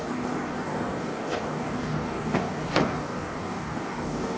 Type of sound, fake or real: fake